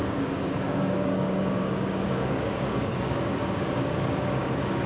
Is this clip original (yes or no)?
no